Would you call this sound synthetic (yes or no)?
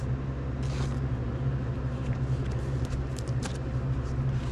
no